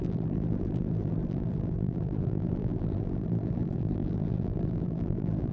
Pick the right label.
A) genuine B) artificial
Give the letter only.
B